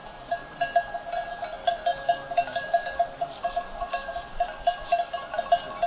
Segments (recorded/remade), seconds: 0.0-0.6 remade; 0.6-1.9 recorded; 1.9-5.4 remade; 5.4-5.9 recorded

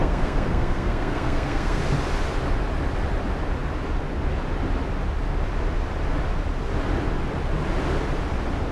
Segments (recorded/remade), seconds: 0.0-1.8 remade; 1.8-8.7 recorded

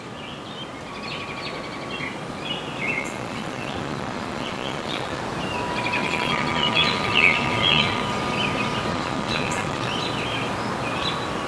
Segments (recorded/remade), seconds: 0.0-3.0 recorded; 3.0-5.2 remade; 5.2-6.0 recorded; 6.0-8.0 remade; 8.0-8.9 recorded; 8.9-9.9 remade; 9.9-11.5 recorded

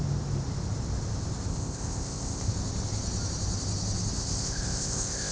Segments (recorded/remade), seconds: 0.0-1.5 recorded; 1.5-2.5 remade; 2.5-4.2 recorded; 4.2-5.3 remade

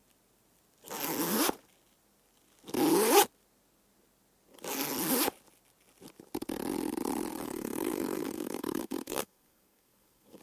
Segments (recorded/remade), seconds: 0.0-7.3 recorded; 7.3-10.4 remade